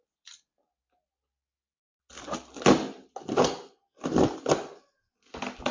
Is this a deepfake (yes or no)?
no